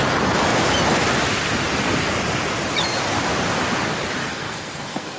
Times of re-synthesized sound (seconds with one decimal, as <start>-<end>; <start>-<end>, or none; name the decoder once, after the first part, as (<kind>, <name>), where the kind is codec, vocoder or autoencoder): 4.2-5.2 (codec, SNAC)